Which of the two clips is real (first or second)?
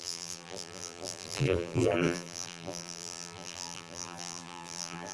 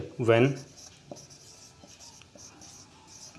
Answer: second